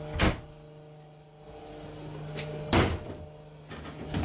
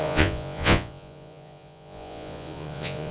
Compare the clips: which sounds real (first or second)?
first